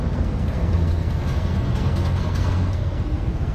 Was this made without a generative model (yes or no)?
no